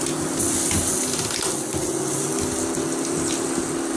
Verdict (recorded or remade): recorded